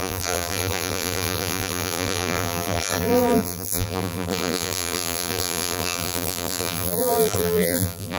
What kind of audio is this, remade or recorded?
remade